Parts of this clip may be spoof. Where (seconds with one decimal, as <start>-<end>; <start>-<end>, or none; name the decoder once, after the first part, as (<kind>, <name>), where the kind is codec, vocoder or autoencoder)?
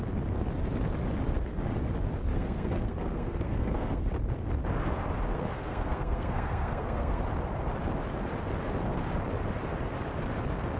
2.3-4.1 (codec, SNAC); 5.3-7.2